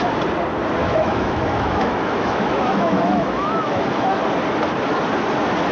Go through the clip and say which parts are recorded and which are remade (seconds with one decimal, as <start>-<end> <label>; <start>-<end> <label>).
0.0-0.8 recorded; 0.8-4.2 remade; 4.2-5.7 recorded